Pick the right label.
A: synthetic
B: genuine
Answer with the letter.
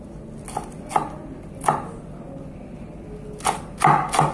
B